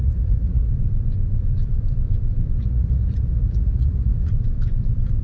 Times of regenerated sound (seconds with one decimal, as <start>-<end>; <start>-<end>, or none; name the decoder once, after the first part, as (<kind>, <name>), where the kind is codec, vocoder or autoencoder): 0.0-0.7 (vocoder, Vocos); 2.6-4.3